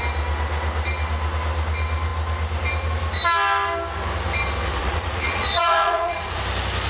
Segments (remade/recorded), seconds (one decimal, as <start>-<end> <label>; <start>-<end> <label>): 0.0-4.8 recorded; 4.8-6.4 remade; 6.4-6.9 recorded